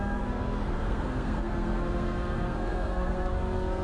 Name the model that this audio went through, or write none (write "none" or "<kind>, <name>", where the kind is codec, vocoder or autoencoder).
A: codec, SNAC